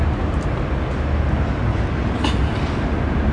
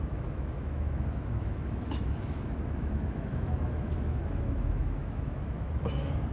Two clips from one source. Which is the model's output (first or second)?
second